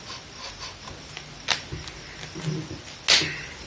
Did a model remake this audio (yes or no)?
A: no